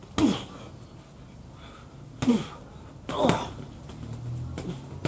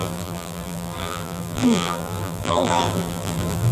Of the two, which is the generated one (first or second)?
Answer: second